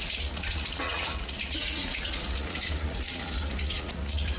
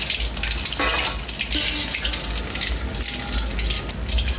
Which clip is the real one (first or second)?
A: second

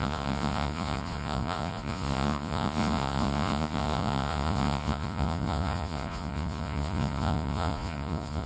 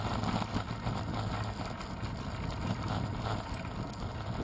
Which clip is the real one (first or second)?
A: second